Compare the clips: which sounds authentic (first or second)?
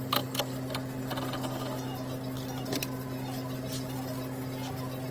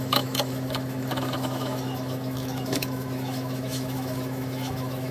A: first